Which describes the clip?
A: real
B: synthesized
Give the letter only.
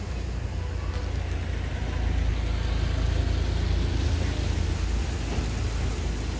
A